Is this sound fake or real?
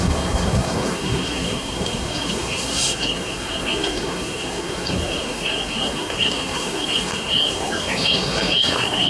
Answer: fake